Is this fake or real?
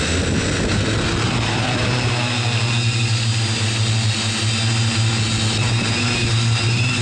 real